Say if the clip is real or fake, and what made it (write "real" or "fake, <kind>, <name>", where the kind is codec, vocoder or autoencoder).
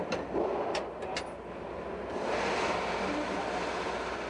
real